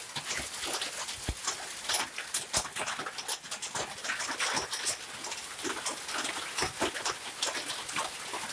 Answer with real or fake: real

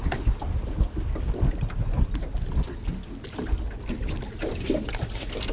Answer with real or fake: real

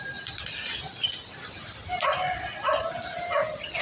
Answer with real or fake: real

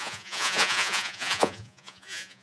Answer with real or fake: fake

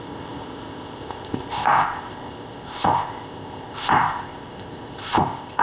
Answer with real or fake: fake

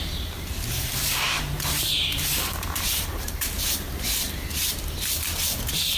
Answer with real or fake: fake